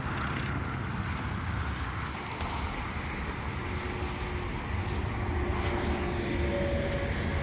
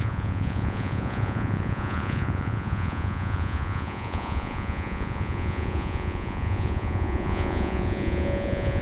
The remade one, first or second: second